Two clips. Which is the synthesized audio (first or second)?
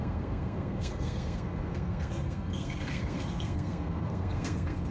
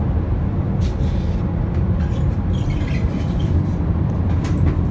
first